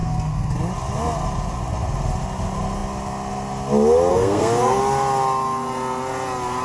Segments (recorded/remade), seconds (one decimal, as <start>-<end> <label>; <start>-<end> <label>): 0.0-0.5 remade; 0.5-4.1 recorded; 4.1-4.8 remade; 4.8-6.6 recorded